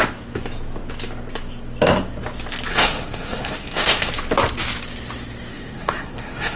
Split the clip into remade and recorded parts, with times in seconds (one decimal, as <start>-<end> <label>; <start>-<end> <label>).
0.0-2.7 recorded; 2.7-4.1 remade; 4.1-5.5 recorded; 5.5-6.6 remade